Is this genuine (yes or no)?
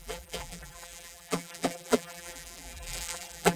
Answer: no